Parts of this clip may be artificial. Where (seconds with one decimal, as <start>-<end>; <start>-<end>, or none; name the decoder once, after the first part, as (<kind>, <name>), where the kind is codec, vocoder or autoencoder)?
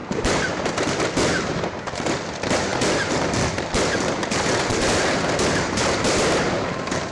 0.0-7.1 (vocoder, BigVGAN v2)